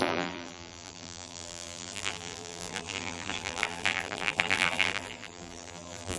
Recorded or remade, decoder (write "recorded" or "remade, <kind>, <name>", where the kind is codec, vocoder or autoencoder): remade, vocoder, BigVGAN v2